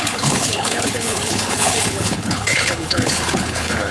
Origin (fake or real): fake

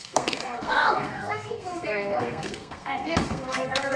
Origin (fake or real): fake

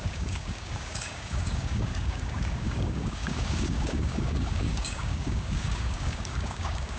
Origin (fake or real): fake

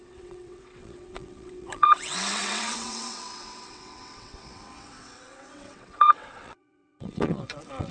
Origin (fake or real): fake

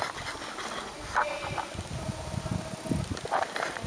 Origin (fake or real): real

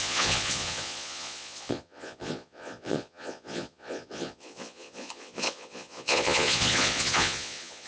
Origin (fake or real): fake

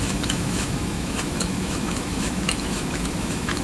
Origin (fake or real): fake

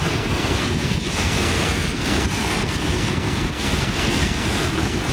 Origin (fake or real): fake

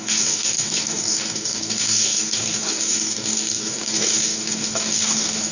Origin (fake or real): fake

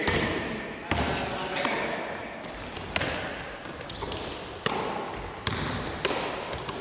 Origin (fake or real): real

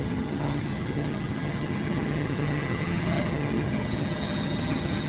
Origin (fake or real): fake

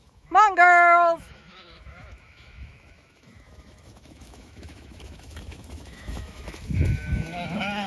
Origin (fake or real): fake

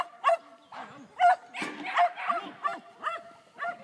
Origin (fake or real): real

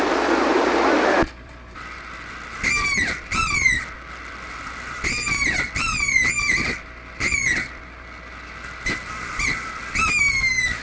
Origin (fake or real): fake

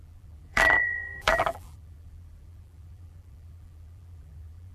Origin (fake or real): fake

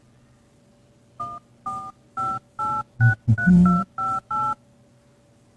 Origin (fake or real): real